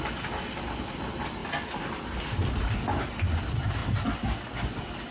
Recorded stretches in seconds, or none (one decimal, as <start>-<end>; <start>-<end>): 0.0-5.1